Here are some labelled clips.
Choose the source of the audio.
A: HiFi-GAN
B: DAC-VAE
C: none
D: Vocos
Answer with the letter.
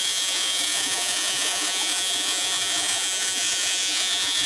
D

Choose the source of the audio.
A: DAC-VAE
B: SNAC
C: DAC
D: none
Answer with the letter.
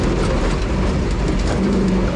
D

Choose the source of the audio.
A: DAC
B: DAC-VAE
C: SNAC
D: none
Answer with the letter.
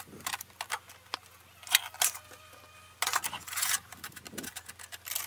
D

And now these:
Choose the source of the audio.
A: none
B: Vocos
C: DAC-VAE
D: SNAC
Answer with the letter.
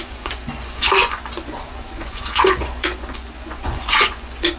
B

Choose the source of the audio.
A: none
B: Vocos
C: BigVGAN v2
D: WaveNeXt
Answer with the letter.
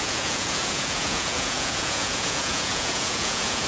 B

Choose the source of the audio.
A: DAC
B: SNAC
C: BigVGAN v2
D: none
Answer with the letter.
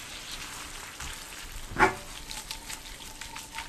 D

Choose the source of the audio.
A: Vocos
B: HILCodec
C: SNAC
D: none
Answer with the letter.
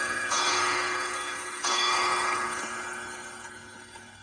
B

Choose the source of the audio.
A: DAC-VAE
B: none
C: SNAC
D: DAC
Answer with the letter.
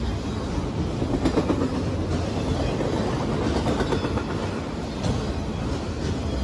B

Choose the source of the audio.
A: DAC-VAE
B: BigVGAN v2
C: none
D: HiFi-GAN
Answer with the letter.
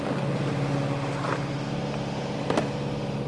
C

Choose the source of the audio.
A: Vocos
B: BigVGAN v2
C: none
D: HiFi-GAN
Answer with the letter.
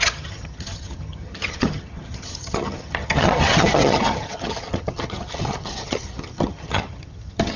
D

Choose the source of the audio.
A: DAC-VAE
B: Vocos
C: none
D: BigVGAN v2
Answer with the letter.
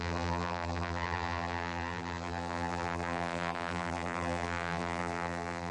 D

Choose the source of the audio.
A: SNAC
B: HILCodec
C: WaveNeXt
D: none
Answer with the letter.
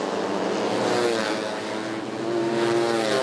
D